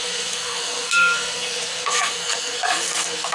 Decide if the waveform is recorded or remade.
remade